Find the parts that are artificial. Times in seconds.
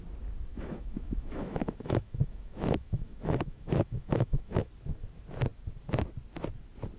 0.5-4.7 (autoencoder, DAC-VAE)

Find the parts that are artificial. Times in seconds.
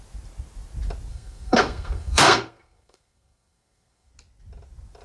1.1-4.1 (codec, SNAC)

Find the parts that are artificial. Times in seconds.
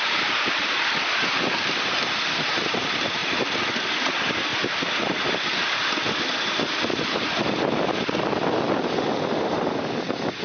none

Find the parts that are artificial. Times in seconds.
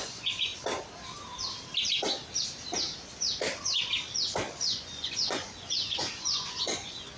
0.0-0.5 (vocoder, Vocos); 4.6-7.2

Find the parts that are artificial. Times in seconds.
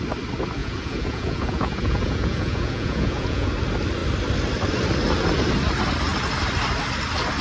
0.6-3.5 (vocoder, Vocos)